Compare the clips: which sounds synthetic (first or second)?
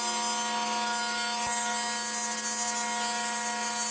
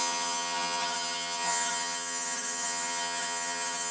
second